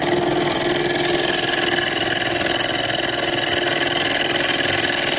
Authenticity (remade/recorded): recorded